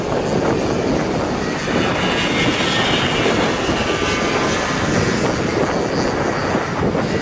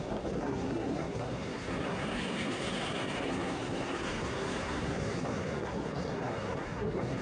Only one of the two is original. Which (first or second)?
first